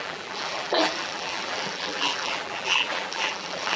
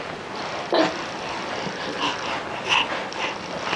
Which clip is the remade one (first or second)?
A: first